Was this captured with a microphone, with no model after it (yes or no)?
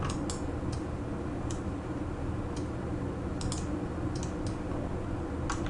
yes